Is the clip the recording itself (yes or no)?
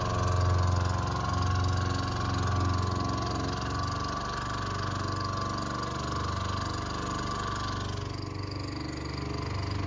yes